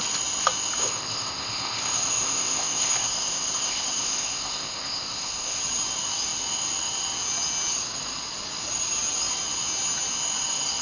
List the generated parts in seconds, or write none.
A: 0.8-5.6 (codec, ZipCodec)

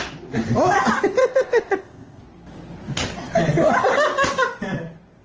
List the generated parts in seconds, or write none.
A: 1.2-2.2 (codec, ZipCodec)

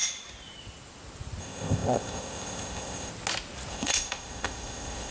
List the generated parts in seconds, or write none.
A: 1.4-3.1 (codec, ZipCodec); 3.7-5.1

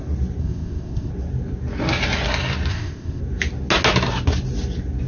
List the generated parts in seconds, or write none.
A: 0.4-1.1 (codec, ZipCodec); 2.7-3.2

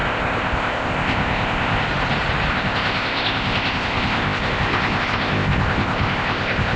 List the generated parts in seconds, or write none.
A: 0.0-1.8 (codec, ZipCodec); 2.5-6.8